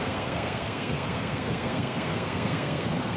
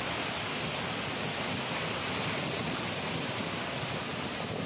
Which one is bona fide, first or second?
second